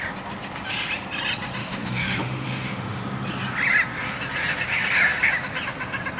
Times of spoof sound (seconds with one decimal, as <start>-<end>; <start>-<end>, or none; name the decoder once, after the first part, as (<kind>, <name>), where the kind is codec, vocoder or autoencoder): 1.6-3.0 (autoencoder, DAC-VAE)